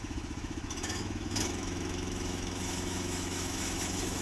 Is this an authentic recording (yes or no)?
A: no